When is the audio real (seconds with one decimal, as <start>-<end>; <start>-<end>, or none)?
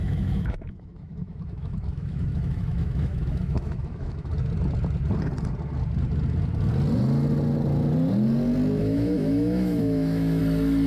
4.3-8.8; 10.4-10.9